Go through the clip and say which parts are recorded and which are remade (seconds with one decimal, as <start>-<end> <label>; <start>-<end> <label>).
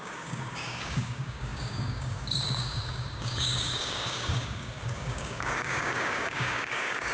0.0-7.1 remade